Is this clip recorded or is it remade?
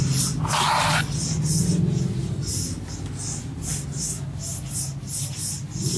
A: recorded